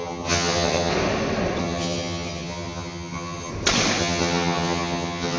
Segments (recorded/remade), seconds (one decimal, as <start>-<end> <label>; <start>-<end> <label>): 0.0-0.9 remade; 0.9-1.6 recorded; 1.6-3.5 remade; 3.5-4.0 recorded; 4.0-5.4 remade